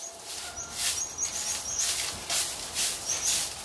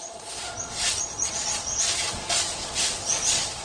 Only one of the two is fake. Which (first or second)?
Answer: second